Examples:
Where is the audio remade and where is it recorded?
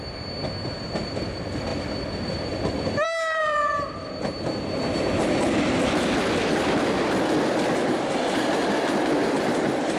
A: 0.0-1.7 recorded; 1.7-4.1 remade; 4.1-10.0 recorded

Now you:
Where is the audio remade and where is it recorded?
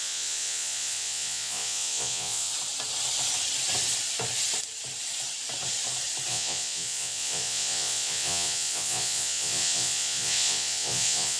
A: 0.0-2.5 remade; 2.5-6.3 recorded; 6.3-11.4 remade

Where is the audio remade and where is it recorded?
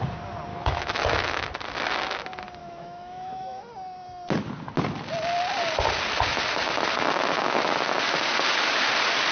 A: 0.0-0.5 recorded; 0.5-1.5 remade; 1.5-2.6 recorded; 2.6-3.6 remade; 3.6-9.3 recorded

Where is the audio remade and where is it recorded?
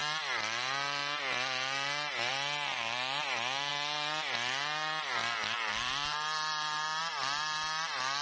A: 0.0-8.2 recorded